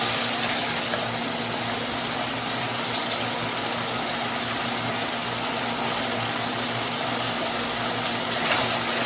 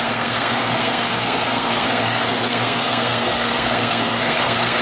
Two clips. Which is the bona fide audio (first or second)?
first